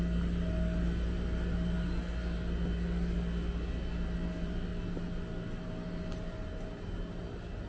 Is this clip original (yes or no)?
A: yes